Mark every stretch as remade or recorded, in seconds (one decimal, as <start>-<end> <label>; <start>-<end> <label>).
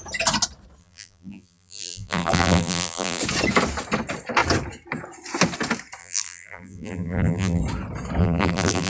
0.0-0.8 recorded; 0.8-3.2 remade; 3.2-6.0 recorded; 6.0-7.6 remade; 7.6-8.2 recorded; 8.2-8.9 remade